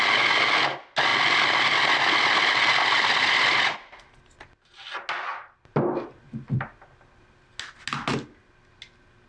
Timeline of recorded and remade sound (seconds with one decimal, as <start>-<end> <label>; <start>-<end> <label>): 0.0-9.3 recorded